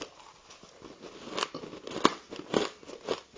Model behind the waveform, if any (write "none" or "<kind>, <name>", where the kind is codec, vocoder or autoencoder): none